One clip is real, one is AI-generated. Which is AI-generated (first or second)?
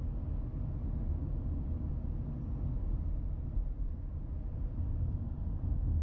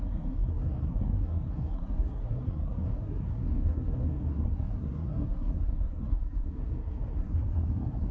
second